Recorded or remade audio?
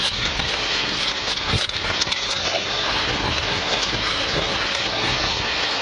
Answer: remade